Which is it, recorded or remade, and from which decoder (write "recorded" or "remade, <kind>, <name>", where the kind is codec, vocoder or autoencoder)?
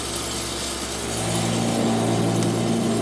recorded